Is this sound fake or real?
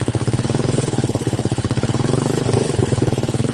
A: fake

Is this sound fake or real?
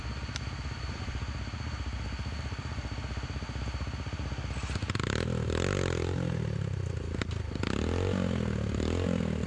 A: real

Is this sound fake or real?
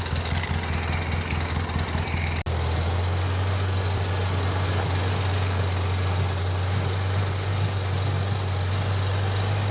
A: real